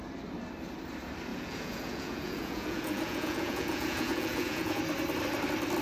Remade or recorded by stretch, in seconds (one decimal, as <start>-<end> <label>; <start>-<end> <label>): 0.0-1.3 recorded; 1.3-4.8 remade; 4.8-5.8 recorded